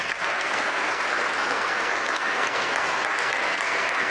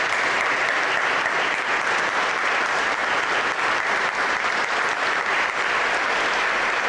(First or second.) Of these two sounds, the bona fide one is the second